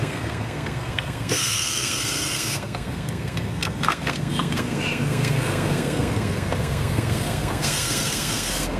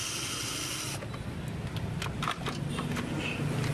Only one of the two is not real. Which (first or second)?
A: first